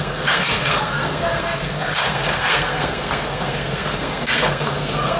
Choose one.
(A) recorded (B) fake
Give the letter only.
B